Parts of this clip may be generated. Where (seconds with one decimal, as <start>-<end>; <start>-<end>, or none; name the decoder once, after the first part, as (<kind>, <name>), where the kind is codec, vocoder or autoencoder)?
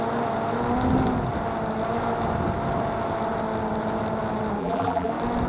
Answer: 4.6-5.1 (vocoder, BigVGAN v2)